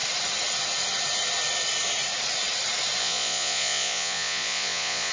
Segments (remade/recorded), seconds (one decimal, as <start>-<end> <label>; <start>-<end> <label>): 0.0-3.0 recorded; 3.0-5.1 remade